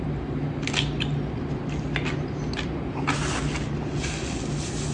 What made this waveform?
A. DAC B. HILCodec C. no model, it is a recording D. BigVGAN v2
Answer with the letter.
C